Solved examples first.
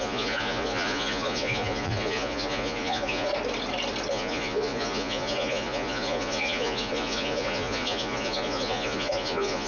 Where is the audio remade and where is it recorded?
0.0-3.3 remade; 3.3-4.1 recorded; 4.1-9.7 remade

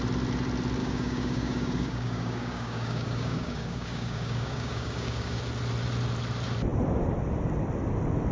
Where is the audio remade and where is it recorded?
0.0-0.8 recorded; 0.8-5.4 remade; 5.4-8.3 recorded